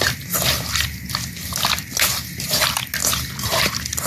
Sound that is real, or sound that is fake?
real